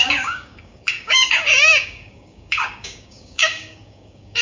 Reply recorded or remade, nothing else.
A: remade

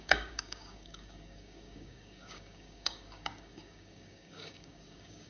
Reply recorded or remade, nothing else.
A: remade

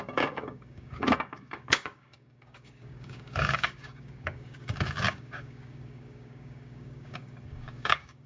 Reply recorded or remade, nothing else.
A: remade